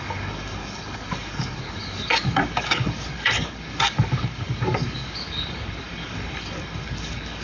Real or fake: fake